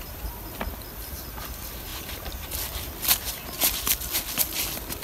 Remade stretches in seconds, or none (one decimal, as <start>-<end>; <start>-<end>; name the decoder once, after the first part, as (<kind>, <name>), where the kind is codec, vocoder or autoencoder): none